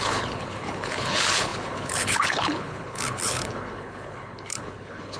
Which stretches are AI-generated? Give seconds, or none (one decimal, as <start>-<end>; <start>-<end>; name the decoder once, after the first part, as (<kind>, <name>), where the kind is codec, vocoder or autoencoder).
0.0-5.2 (codec, HILCodec)